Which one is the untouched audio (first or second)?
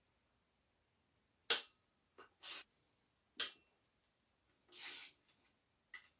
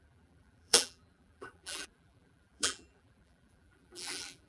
first